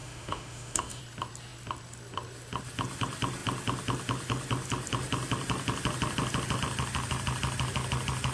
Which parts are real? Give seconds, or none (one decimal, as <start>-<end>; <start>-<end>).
1.0-8.3